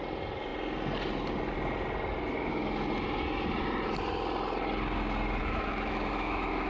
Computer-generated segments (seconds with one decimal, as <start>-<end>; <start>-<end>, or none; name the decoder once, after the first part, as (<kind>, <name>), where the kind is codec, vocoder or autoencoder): 5.4-6.7 (autoencoder, DAC-VAE)